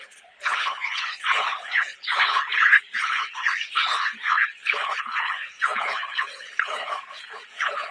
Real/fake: fake